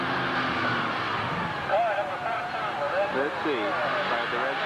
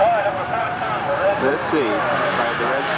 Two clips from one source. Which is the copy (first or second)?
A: second